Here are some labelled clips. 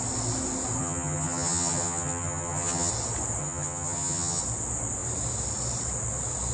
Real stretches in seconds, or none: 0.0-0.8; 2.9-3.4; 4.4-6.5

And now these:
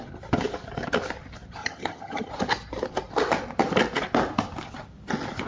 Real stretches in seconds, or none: 0.0-1.6; 2.3-5.5

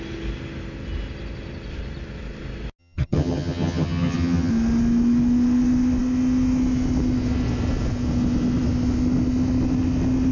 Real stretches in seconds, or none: 0.0-2.8; 4.5-10.3